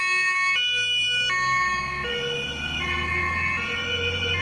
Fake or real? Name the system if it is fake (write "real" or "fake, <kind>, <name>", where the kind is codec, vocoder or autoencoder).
real